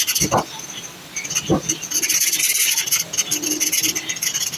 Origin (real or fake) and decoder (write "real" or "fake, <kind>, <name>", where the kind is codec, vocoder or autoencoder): real